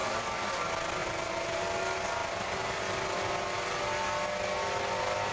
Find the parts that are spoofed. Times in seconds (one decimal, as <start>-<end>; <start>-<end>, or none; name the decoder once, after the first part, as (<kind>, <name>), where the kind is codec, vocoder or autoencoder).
1.0-1.6 (vocoder, BigVGAN v2)